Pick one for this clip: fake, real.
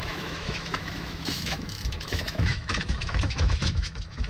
fake